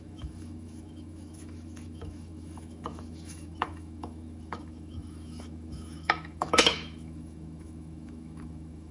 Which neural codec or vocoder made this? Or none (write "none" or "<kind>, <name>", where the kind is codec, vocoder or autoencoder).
autoencoder, DAC-VAE